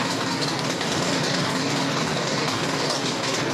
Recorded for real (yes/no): no